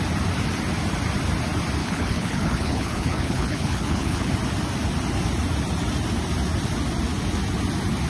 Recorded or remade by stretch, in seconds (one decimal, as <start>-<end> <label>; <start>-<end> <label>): 0.0-1.8 recorded; 1.8-4.3 remade; 4.3-8.1 recorded